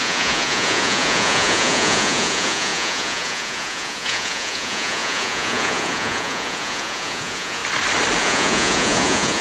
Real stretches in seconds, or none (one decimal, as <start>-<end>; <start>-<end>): 7.6-8.2